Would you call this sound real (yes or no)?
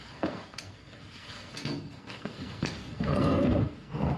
no